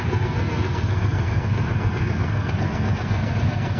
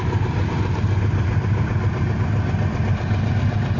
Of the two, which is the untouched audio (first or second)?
second